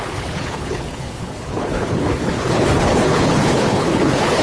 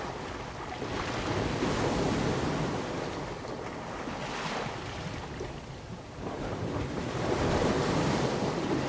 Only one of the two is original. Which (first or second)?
second